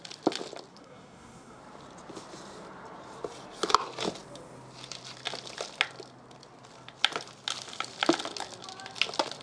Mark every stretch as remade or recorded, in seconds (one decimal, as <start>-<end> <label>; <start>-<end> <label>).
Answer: 0.0-0.7 recorded; 0.7-1.6 remade; 1.6-9.4 recorded